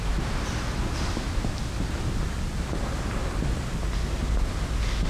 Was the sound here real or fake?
real